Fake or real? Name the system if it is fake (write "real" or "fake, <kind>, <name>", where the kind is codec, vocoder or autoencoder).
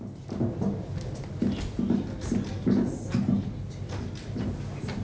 real